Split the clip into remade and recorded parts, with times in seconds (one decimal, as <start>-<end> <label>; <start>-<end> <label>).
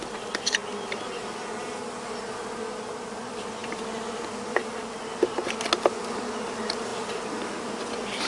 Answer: 0.0-8.3 recorded